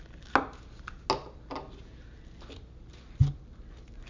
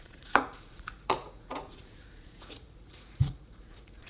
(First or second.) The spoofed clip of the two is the second